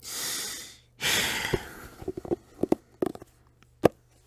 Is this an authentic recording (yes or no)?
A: yes